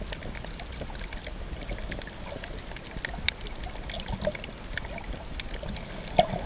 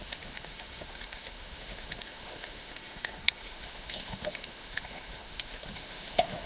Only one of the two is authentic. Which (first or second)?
first